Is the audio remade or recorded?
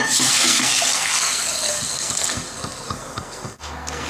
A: remade